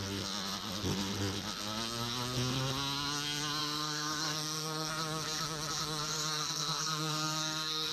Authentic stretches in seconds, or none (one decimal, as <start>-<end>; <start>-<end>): 0.0-3.6; 4.9-6.1